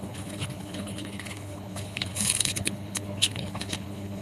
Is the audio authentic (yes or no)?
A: no